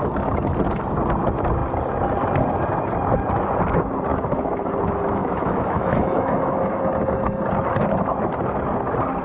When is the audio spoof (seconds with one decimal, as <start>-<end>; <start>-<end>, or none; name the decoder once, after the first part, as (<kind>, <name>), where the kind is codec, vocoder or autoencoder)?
4.1-4.7 (autoencoder, DAC-VAE); 5.2-6.8